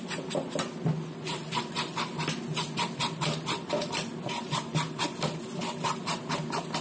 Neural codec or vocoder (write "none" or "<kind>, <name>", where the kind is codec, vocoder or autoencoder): none